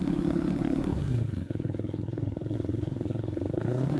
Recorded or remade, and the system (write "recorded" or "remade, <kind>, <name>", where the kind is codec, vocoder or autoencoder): remade, codec, SNAC